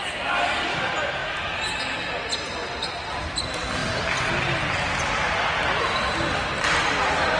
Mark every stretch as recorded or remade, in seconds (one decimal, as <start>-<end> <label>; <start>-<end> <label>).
0.0-7.4 recorded